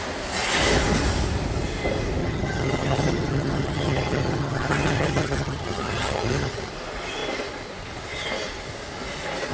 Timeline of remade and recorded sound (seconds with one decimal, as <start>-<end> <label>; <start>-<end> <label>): 0.0-2.2 recorded; 2.2-6.7 remade; 6.7-9.5 recorded